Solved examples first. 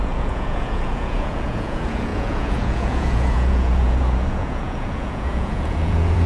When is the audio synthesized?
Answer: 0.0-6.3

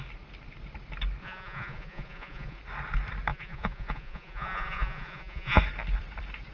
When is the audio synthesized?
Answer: 1.2-2.6; 3.3-5.6